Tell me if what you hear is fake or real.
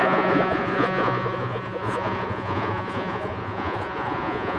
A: fake